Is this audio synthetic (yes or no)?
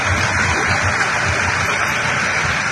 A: no